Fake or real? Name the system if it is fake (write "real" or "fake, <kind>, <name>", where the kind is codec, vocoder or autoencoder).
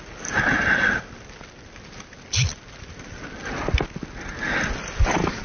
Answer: real